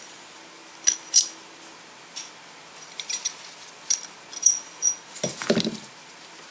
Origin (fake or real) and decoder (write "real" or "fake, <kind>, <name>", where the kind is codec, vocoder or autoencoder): real